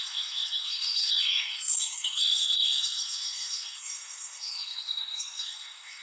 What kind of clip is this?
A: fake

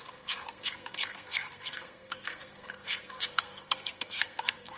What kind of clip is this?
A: fake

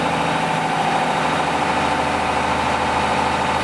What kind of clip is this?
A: real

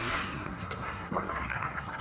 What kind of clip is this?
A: fake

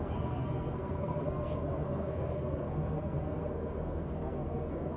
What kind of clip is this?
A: fake